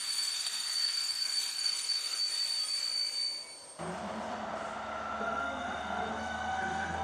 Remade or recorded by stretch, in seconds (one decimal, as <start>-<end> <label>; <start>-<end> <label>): 0.0-2.2 remade; 2.2-5.2 recorded; 5.2-7.0 remade